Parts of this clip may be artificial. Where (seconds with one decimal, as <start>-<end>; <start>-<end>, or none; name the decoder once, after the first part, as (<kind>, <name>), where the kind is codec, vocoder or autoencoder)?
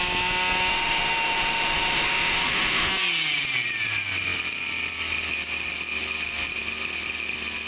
0.7-2.9 (autoencoder, DAC-VAE)